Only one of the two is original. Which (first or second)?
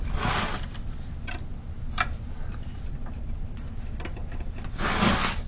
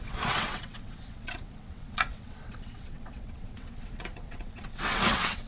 first